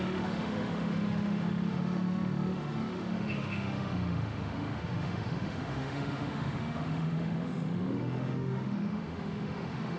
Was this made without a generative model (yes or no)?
no